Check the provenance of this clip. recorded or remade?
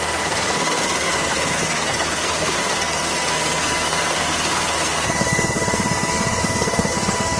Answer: remade